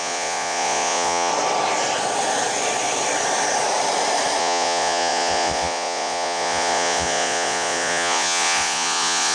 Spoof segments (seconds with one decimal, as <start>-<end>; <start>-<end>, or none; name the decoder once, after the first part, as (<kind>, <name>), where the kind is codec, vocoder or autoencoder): 0.0-1.3 (vocoder, Vocos); 4.4-9.3

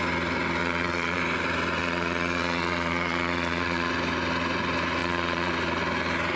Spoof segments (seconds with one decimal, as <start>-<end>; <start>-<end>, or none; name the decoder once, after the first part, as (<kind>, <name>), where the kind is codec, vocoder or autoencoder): 0.6-1.2 (vocoder, Vocos); 1.8-3.9; 5.0-5.5

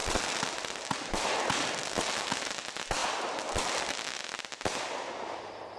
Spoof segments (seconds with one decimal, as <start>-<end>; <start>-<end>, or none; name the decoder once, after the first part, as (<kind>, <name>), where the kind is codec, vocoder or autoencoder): none

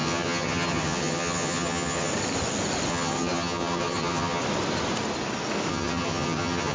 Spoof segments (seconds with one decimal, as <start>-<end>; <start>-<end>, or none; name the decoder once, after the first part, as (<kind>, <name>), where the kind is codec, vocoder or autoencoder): 0.0-2.1 (vocoder, HiFi-GAN); 2.9-4.4; 5.7-6.7